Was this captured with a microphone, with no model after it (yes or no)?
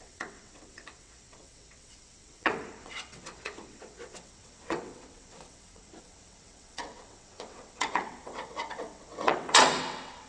no